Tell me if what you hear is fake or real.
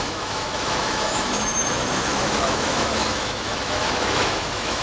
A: fake